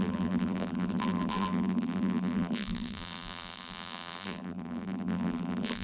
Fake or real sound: fake